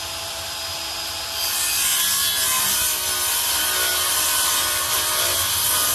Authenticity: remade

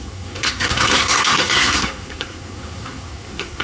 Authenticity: remade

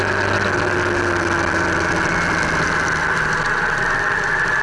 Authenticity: recorded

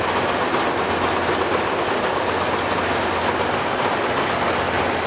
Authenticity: recorded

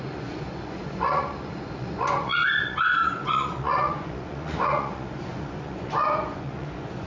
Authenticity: remade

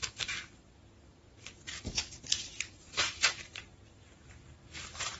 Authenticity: remade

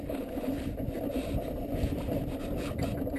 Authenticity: recorded